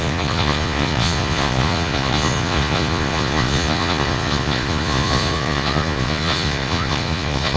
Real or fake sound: fake